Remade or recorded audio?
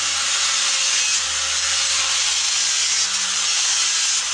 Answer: recorded